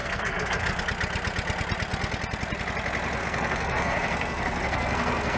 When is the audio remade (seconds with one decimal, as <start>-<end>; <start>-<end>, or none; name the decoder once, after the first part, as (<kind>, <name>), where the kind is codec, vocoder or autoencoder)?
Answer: 0.0-0.8 (codec, SNAC); 3.2-5.4

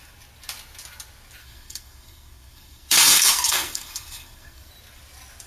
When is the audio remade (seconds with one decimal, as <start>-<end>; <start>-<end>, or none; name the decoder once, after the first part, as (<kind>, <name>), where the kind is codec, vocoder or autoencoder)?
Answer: 1.4-4.7 (codec, SNAC)